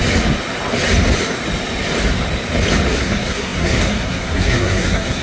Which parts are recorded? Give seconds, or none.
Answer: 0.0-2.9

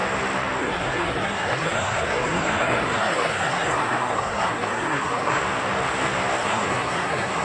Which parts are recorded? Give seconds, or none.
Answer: 0.0-0.6; 5.4-6.4

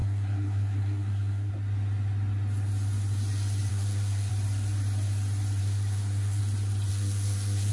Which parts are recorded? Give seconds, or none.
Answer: 1.5-3.7; 4.3-5.6; 6.4-6.9